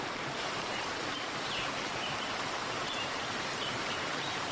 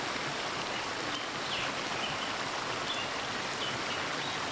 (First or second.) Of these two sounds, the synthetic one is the first